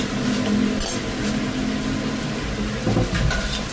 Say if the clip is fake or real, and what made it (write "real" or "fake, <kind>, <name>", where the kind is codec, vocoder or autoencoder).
real